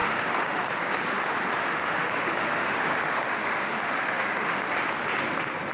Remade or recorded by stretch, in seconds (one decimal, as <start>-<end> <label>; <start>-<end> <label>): 0.0-0.8 remade; 0.8-1.6 recorded; 1.6-4.6 remade; 4.6-5.7 recorded